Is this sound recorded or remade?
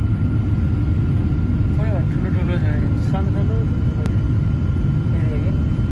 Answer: recorded